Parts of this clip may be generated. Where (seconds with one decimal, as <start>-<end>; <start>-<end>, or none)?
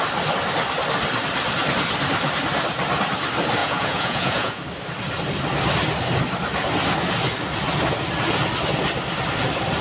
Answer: 3.6-4.6